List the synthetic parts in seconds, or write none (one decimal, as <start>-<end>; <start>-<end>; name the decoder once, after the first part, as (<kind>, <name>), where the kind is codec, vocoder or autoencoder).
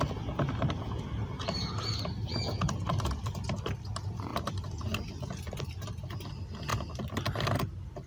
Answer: none